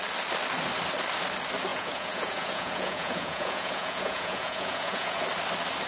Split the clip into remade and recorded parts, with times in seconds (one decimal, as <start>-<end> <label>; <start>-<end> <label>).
0.0-1.7 recorded; 1.7-5.2 remade; 5.2-5.9 recorded